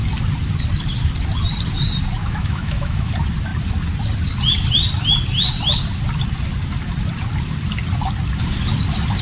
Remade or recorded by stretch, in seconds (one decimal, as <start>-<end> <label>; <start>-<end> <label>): 0.0-2.2 recorded; 2.2-3.1 remade; 3.1-9.2 recorded